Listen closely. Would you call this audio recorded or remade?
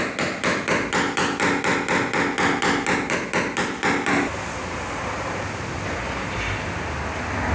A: recorded